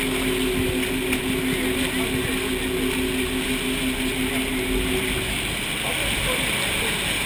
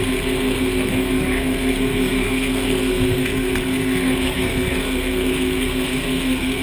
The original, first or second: first